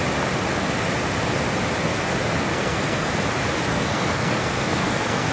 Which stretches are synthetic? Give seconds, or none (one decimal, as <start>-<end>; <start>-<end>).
2.5-3.1; 3.7-5.3